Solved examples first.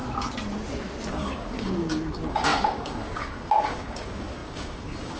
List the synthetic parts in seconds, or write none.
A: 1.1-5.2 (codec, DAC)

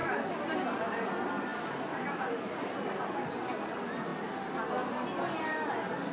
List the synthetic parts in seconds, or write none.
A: none

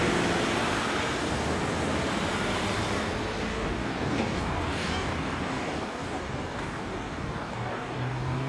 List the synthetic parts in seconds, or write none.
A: 3.5-8.5 (codec, DAC)